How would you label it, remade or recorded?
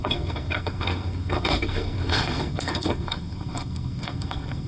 remade